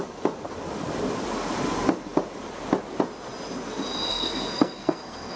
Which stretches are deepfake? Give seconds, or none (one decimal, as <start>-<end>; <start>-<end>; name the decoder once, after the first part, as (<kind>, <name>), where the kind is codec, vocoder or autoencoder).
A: 4.1-5.4 (codec, SNAC)